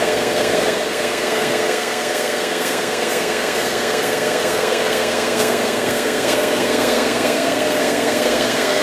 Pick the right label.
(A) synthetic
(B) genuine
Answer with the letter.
A